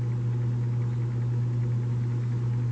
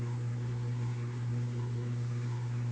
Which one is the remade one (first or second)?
second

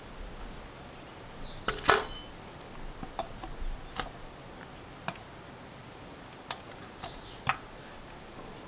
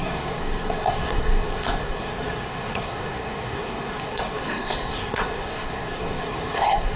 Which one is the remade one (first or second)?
second